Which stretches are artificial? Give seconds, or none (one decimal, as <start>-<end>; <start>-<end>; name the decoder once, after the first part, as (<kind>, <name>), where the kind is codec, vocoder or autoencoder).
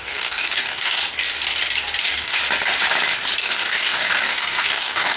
0.0-1.0 (codec, DAC); 2.0-2.4; 3.4-5.2